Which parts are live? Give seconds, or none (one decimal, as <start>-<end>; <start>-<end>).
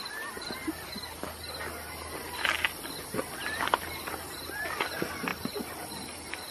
0.0-5.3; 5.8-6.5